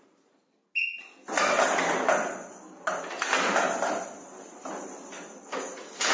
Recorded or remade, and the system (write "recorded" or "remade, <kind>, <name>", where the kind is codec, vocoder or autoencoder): recorded